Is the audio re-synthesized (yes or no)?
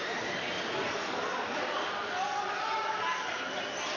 no